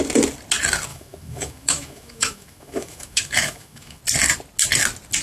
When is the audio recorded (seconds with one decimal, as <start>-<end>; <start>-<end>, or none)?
0.0-0.9; 4.0-5.2